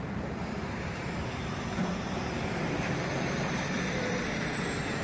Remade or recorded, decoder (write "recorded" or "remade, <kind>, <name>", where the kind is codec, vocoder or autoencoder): remade, vocoder, BigVGAN v2